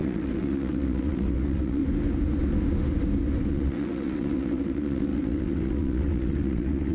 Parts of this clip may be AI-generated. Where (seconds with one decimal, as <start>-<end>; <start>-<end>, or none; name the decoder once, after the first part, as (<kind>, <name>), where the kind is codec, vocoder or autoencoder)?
0.0-1.8 (vocoder, WaveNeXt); 3.5-6.9